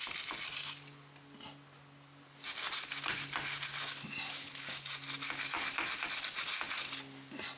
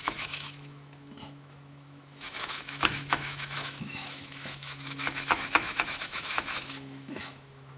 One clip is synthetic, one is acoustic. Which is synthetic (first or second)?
second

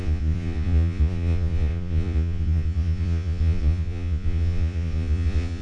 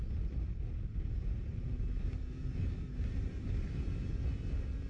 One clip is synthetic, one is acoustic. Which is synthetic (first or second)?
first